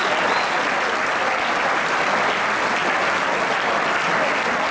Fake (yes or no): no